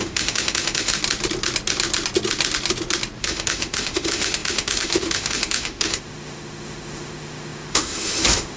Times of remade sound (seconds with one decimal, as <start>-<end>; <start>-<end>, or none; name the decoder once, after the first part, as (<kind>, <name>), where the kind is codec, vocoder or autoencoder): 0.0-1.0 (autoencoder, DAC-VAE); 3.2-8.6